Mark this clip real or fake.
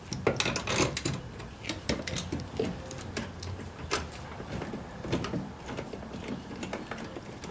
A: real